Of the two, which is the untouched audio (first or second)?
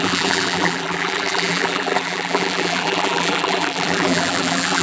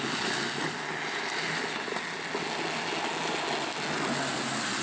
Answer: second